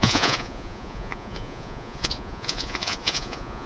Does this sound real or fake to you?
fake